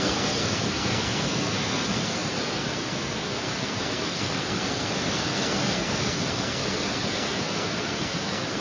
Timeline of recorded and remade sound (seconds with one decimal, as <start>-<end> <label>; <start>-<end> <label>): 0.0-8.6 remade